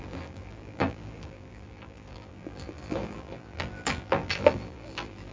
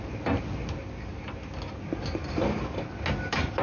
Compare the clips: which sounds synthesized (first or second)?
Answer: first